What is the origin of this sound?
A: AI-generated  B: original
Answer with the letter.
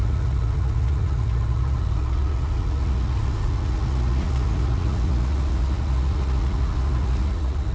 A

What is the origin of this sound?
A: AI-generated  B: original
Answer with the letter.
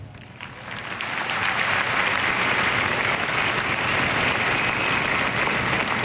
B